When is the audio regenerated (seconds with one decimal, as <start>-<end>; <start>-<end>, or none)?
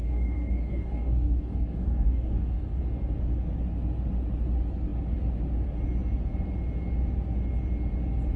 0.0-2.8